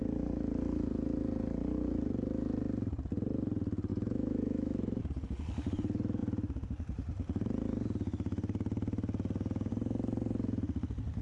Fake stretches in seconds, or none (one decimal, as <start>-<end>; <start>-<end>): 3.9-5.0